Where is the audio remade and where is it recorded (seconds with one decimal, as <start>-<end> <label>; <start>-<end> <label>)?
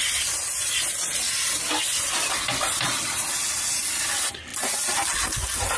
0.0-5.8 recorded